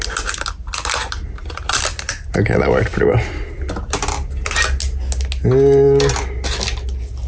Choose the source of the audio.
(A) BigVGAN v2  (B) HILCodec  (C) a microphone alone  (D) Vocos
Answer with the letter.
C